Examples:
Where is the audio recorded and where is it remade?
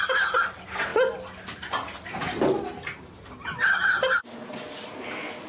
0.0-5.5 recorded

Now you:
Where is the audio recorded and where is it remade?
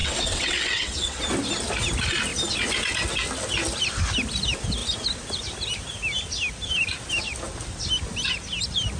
0.0-1.2 remade; 1.2-9.0 recorded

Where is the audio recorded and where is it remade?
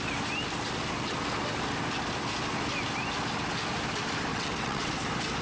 0.0-4.3 recorded; 4.3-4.9 remade; 4.9-5.4 recorded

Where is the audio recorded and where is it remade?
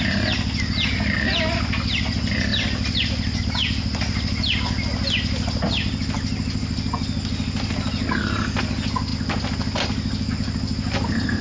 0.0-11.4 recorded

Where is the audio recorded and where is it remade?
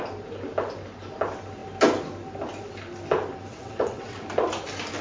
0.0-3.5 recorded; 3.5-4.2 remade; 4.2-5.0 recorded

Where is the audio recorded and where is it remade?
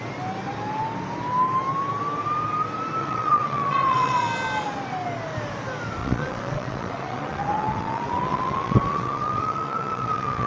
0.0-3.0 recorded; 3.0-4.2 remade; 4.2-6.0 recorded; 6.0-10.5 remade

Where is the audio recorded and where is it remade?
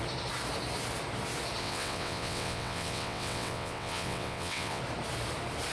0.0-1.6 recorded; 1.6-4.8 remade; 4.8-5.7 recorded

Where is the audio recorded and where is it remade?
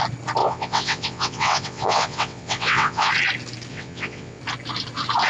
0.0-0.4 recorded; 0.4-3.1 remade; 3.1-3.7 recorded; 3.7-4.4 remade; 4.4-5.3 recorded